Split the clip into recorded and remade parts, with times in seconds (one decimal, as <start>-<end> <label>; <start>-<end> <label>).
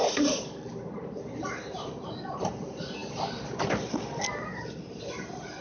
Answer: 0.0-2.1 remade; 2.1-5.6 recorded